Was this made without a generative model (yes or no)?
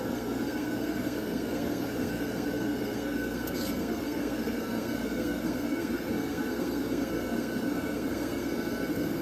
no